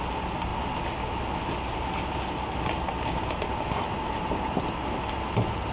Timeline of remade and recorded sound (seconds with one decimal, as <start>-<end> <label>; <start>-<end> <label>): 0.0-5.7 recorded